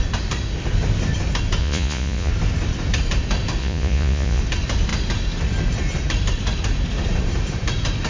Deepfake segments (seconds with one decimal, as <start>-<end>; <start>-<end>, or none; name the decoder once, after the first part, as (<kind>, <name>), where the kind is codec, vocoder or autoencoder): 1.6-2.3 (vocoder, Vocos); 3.6-4.4